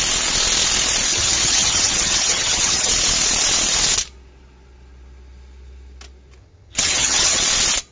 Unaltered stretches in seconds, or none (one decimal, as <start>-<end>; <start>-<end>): 0.0-1.1; 2.9-6.4; 7.4-7.9